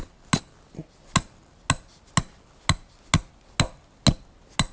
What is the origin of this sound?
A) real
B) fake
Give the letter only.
A